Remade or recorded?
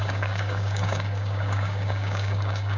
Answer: remade